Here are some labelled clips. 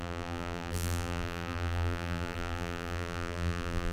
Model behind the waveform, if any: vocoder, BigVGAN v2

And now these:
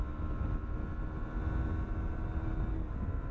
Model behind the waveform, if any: none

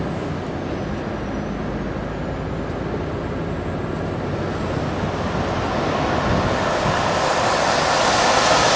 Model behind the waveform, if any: none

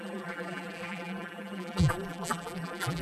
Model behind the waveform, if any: vocoder, BigVGAN v2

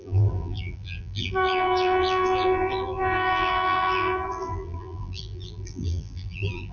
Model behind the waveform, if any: vocoder, BigVGAN v2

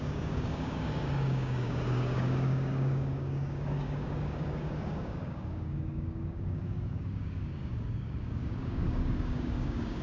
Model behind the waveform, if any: codec, DAC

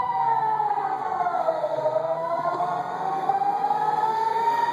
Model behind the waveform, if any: codec, SNAC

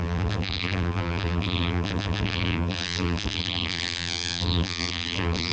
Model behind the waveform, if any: vocoder, BigVGAN v2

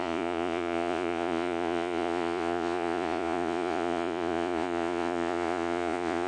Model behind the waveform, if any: vocoder, Vocos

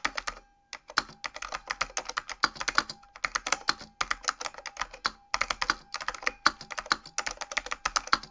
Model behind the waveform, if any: none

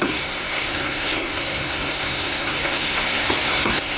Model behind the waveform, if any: codec, SNAC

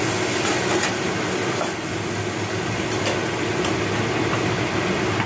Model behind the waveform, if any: none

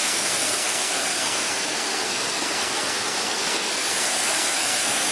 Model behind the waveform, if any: codec, SNAC